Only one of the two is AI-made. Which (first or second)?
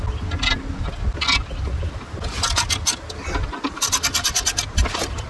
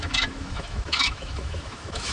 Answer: second